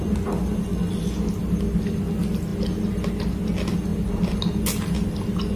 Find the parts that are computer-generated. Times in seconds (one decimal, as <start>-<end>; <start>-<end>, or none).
none